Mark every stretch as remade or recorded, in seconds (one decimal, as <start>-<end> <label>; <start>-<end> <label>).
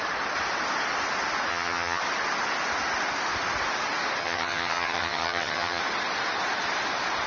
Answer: 0.0-1.5 recorded; 1.5-2.0 remade; 2.0-4.2 recorded; 4.2-5.8 remade; 5.8-7.3 recorded